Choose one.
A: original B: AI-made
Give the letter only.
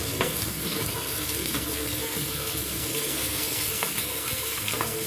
B